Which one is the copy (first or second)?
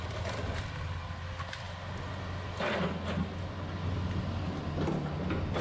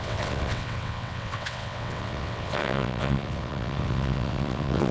second